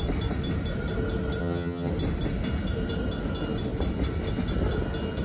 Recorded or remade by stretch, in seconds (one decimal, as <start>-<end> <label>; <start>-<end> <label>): 0.0-1.4 recorded; 1.4-1.9 remade; 1.9-5.2 recorded